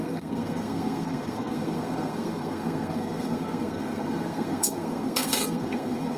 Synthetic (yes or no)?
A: yes